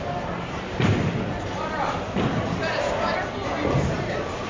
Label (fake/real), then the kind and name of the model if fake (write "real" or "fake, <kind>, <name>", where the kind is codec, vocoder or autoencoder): real